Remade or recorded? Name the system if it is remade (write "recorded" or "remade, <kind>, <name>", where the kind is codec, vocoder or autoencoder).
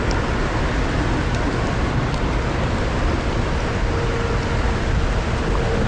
recorded